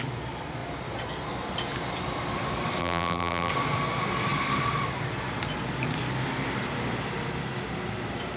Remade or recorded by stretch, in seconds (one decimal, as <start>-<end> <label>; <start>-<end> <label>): 0.0-2.8 recorded; 2.8-3.5 remade; 3.5-8.4 recorded